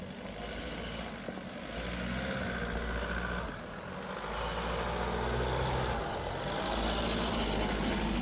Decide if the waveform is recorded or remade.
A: recorded